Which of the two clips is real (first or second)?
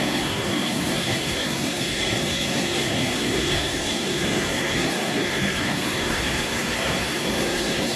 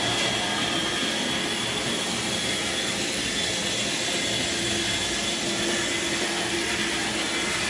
second